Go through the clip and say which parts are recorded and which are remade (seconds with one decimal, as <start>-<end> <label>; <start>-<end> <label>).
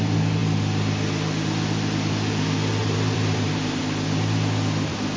0.0-2.8 recorded; 2.8-3.8 remade; 3.8-5.2 recorded